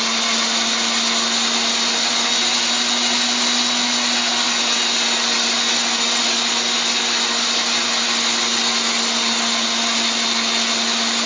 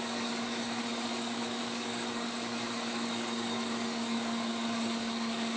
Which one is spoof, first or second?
second